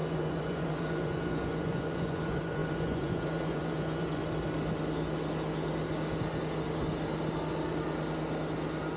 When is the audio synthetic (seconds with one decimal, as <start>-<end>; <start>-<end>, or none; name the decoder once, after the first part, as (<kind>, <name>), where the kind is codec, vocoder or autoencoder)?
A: 0.0-4.2 (vocoder, Vocos)